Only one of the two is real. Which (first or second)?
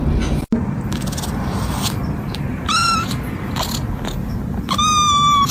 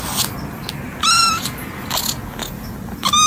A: second